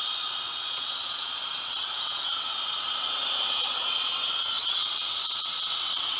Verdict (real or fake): fake